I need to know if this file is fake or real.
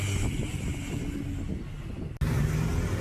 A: real